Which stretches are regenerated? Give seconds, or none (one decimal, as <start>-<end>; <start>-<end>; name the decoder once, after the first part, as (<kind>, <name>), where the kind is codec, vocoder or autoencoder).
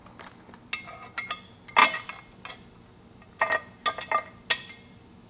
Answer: none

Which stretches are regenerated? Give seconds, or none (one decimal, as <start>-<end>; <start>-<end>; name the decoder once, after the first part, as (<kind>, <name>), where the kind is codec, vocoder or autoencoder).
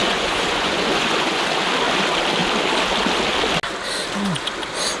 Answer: 0.0-1.4 (vocoder, Vocos)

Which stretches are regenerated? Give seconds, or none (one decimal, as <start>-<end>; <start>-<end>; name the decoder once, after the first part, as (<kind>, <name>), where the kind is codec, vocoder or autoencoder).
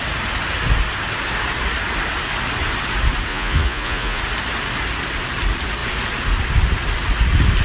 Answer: 3.3-4.2 (vocoder, Vocos)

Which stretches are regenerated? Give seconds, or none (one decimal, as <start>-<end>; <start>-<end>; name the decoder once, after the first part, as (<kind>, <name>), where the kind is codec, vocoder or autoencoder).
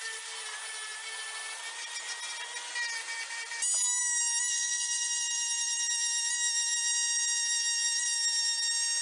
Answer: none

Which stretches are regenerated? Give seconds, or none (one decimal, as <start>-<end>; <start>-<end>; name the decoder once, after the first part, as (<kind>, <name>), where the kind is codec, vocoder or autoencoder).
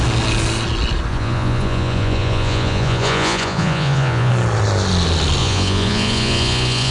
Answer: 1.1-4.3 (vocoder, Vocos); 5.4-6.9